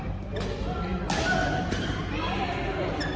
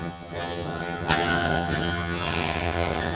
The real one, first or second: first